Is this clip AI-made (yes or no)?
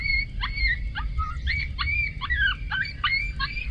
no